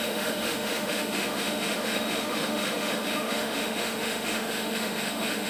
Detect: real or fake fake